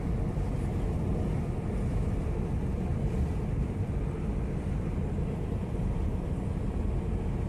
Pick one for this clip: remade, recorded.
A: recorded